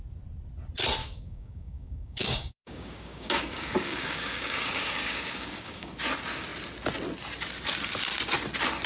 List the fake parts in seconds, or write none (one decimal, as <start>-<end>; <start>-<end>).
1.0-5.9